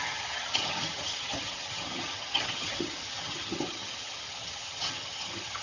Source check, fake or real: fake